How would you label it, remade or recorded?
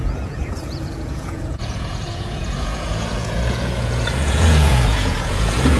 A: remade